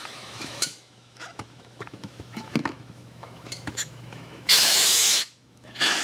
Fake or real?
fake